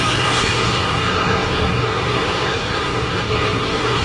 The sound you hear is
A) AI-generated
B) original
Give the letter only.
A